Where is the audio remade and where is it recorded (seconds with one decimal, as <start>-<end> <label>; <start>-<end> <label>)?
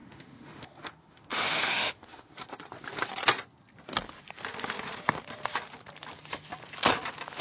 0.0-2.3 remade; 2.3-7.4 recorded